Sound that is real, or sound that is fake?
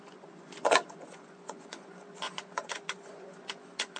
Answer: fake